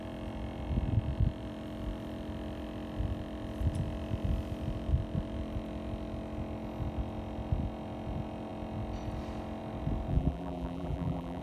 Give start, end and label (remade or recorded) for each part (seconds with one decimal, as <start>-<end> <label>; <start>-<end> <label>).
0.0-10.1 recorded; 10.1-11.4 remade